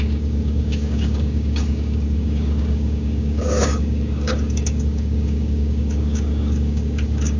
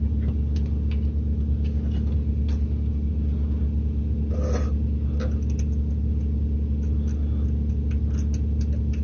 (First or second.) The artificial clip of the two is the first